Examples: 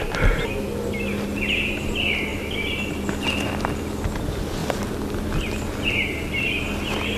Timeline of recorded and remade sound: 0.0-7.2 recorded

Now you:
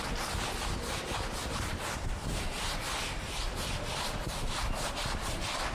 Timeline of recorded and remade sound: 0.0-1.4 recorded; 1.4-4.6 remade; 4.6-5.7 recorded

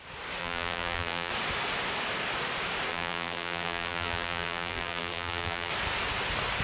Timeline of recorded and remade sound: 0.0-0.4 recorded; 0.4-1.3 remade; 1.3-2.9 recorded; 2.9-5.7 remade; 5.7-6.6 recorded

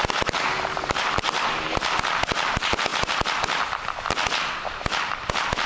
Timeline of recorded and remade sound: 0.0-1.4 remade; 1.4-5.7 recorded

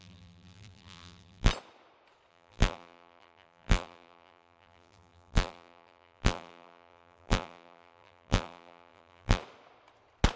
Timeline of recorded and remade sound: 0.0-1.5 remade; 1.5-2.3 recorded; 2.3-9.4 remade; 9.4-10.4 recorded

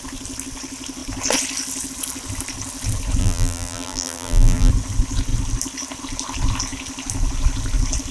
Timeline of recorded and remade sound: 0.0-3.2 recorded; 3.2-4.7 remade; 4.7-8.1 recorded